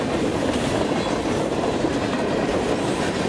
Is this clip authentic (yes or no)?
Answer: yes